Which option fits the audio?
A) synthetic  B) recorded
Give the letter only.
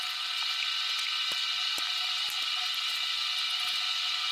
B